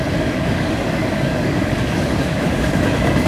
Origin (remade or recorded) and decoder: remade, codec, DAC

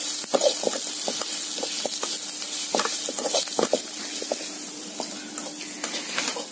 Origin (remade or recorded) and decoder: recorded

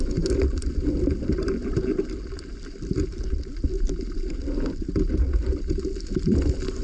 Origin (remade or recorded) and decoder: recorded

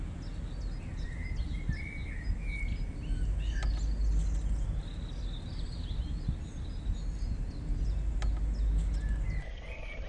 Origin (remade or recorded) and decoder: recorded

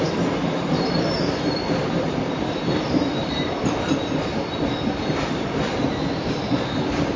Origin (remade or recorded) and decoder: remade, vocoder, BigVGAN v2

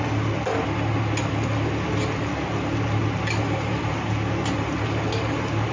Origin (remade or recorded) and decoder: recorded